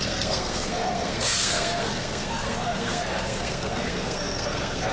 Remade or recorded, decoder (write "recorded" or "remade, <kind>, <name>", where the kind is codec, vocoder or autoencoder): remade, codec, SNAC